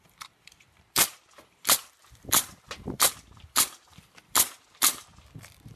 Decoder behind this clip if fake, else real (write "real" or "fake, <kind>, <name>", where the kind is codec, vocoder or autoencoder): fake, vocoder, BigVGAN v2